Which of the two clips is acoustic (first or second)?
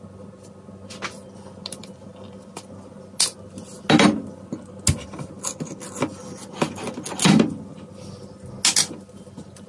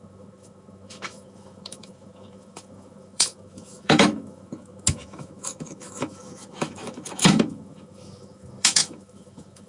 first